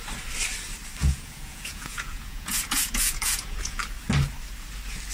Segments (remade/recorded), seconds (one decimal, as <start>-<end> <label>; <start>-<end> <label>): 0.0-1.0 recorded; 1.0-3.8 remade; 3.8-5.1 recorded